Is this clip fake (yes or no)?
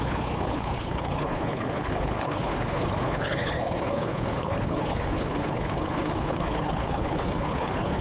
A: yes